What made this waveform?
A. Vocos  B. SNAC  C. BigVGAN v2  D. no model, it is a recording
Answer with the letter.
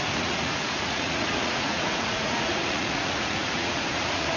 A